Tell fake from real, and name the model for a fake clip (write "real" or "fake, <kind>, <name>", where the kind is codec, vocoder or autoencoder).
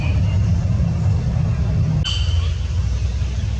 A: real